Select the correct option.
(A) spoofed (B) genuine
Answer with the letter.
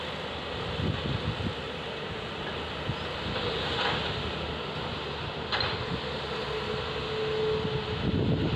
B